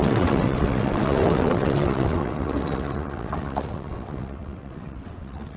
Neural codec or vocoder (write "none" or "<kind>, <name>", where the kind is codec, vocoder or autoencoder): vocoder, WaveNeXt